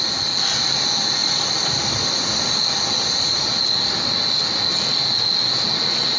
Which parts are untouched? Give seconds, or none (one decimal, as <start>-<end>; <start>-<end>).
0.0-1.2; 4.3-6.2